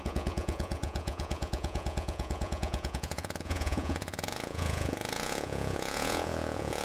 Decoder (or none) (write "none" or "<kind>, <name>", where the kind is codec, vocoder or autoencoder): vocoder, Vocos